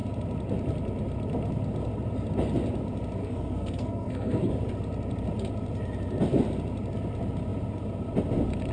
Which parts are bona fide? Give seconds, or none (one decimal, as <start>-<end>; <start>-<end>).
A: 0.0-3.2; 4.5-8.7